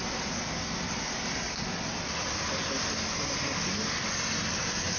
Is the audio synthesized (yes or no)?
no